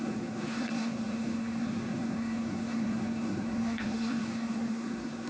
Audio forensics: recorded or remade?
remade